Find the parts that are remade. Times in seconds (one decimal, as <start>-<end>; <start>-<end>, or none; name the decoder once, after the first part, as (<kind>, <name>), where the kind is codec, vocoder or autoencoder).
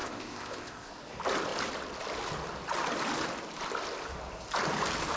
0.0-0.9 (codec, ZipCodec)